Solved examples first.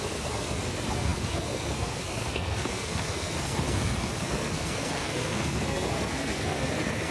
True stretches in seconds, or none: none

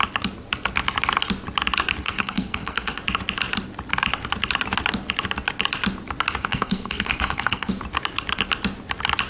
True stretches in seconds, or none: 0.0-2.0; 3.0-6.4; 7.7-9.3

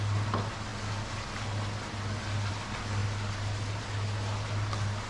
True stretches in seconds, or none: 0.0-5.1

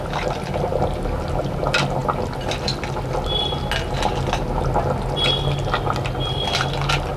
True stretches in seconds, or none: 0.0-7.2

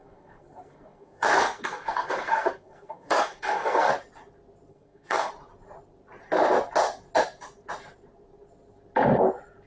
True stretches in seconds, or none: 3.9-4.7; 5.3-9.7